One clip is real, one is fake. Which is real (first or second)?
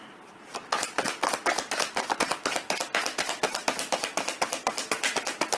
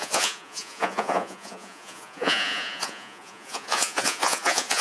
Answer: first